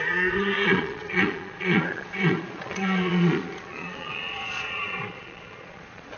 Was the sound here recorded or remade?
remade